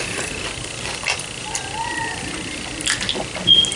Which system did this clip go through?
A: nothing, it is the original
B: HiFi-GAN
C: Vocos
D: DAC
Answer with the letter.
A